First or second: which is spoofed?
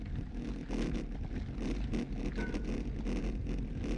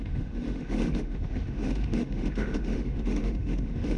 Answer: second